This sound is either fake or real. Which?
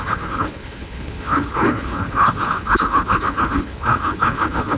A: fake